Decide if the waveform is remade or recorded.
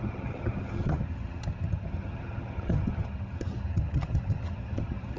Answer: remade